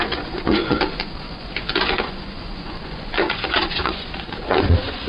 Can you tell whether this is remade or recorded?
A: remade